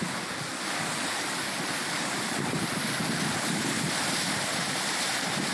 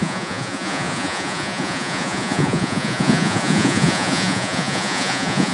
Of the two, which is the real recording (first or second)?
first